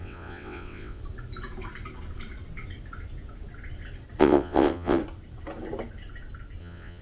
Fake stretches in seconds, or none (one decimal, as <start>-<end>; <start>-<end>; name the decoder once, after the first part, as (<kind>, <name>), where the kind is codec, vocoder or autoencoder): 0.0-1.0 (vocoder, WaveNeXt); 4.2-5.0; 6.6-7.0